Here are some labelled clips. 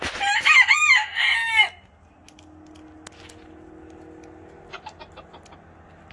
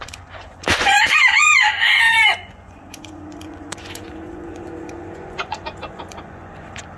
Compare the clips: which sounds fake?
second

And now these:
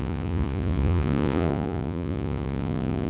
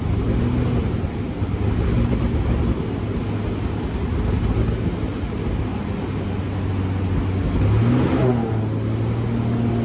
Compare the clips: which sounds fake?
first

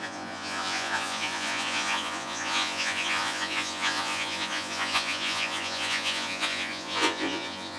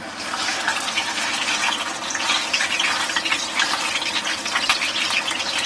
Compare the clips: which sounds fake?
first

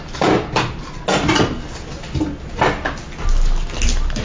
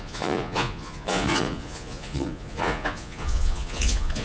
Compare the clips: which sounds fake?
second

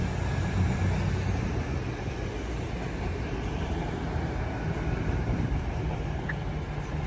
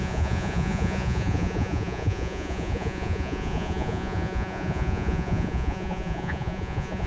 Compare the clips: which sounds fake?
second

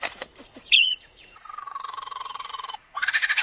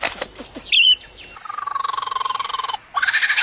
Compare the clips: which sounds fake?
first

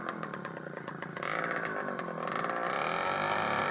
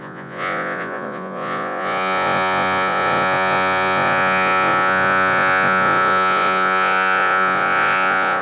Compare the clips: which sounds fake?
second